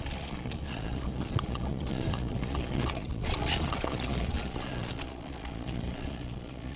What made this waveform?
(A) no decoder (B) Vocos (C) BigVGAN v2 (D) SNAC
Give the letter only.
B